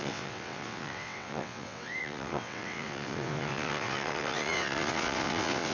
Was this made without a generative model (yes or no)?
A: no